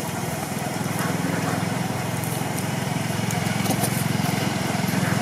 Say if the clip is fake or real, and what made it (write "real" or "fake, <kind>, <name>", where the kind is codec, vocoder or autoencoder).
fake, vocoder, BigVGAN v2